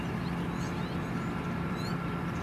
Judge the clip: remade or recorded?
remade